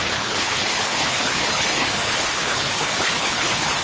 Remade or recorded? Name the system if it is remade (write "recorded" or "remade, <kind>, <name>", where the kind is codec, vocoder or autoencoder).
remade, codec, HILCodec